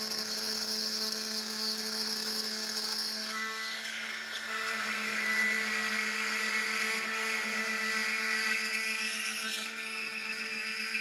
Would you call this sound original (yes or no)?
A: no